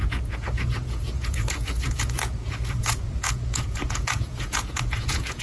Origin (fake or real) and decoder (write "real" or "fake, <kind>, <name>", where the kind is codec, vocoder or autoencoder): fake, vocoder, Vocos